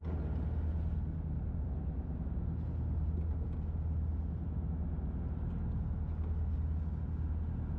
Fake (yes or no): no